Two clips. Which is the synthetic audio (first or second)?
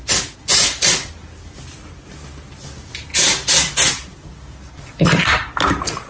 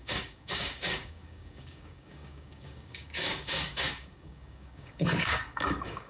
second